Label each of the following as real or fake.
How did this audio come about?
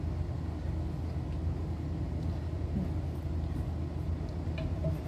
real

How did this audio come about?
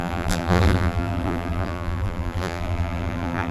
fake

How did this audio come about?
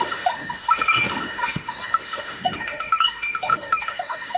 fake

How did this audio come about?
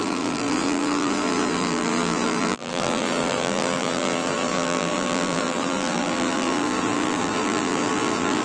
fake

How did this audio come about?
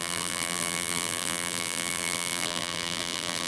fake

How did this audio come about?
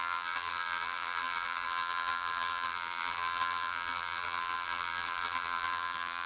fake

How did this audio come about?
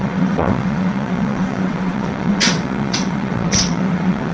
fake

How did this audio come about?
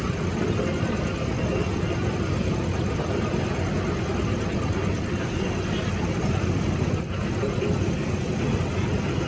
real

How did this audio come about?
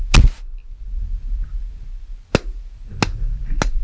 real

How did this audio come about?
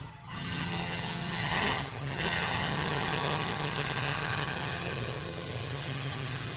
fake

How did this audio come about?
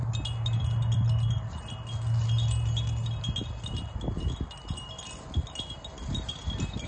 real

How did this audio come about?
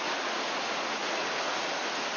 fake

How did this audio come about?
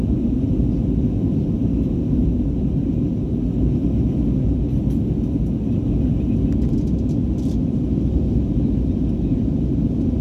real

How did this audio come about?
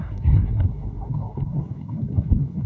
fake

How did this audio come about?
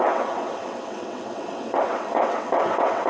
fake